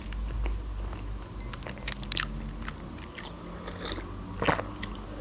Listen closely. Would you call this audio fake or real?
real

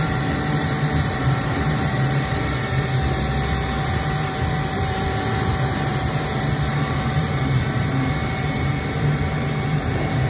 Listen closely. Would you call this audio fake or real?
fake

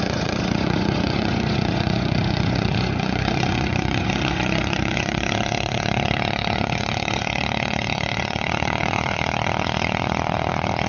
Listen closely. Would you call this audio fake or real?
fake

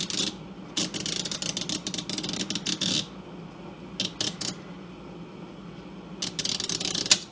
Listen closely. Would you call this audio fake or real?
real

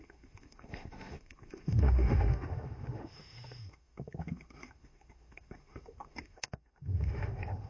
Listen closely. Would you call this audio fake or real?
fake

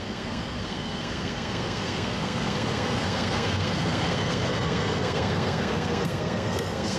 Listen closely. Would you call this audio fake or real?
fake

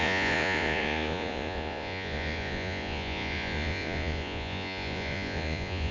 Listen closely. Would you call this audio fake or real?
fake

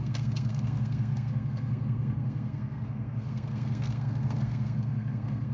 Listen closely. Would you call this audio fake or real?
fake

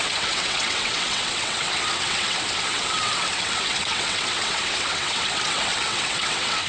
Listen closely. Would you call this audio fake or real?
fake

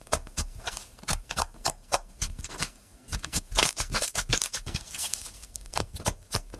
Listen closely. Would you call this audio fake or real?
fake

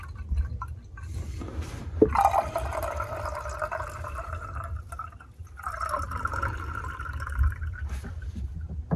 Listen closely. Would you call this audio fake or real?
real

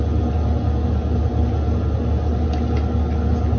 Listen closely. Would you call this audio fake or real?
real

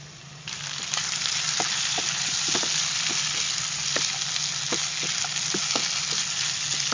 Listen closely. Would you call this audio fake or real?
real